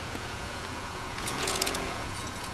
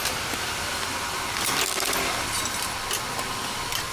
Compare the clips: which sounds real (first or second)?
second